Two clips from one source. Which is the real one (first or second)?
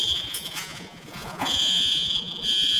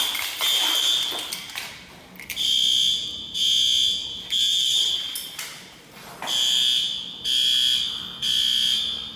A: second